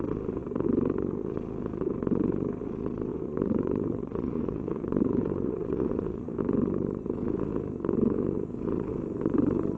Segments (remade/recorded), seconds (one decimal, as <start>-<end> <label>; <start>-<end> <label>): 0.0-3.1 recorded; 3.1-6.4 remade; 6.4-9.8 recorded